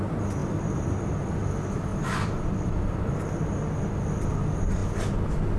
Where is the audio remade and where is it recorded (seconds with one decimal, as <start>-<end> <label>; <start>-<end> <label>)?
0.0-0.4 recorded; 0.4-1.1 remade; 1.1-1.9 recorded; 1.9-3.1 remade; 3.1-5.6 recorded